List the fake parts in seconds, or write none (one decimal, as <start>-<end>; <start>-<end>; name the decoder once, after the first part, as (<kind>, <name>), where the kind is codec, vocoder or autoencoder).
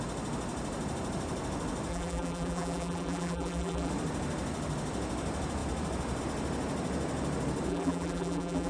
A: 1.9-3.9 (vocoder, BigVGAN v2); 7.7-8.7